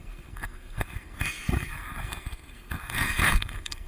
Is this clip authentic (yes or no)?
no